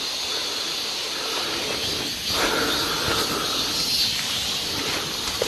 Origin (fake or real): real